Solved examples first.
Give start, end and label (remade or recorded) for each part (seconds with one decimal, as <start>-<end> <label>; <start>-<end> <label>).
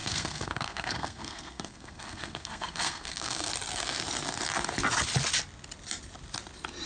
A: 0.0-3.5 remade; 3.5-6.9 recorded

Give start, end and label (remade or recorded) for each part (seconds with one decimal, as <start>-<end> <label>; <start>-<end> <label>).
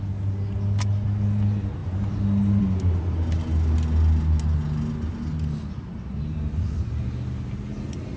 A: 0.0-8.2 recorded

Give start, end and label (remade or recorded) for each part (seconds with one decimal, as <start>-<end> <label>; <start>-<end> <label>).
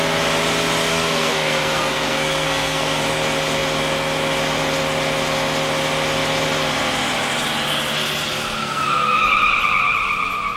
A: 0.0-0.9 recorded; 0.9-3.0 remade; 3.0-8.6 recorded; 8.6-9.2 remade; 9.2-10.6 recorded